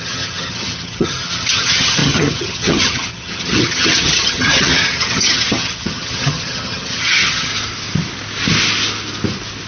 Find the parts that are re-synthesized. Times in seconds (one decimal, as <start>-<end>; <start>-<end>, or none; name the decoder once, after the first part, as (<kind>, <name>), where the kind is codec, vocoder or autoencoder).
0.0-7.5 (vocoder, HiFi-GAN)